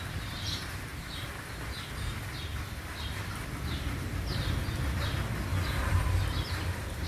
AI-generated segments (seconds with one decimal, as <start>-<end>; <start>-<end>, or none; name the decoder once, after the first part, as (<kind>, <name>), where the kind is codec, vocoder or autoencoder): 0.0-0.9 (vocoder, BigVGAN v2); 4.8-7.1